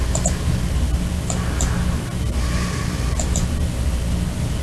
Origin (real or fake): real